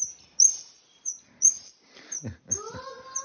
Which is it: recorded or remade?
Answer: recorded